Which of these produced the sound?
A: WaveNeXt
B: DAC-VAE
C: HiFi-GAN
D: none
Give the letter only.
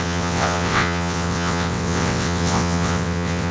A